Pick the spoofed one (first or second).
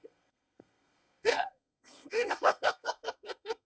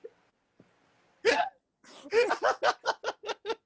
first